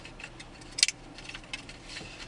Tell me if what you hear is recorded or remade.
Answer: recorded